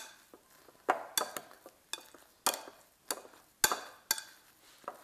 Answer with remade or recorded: recorded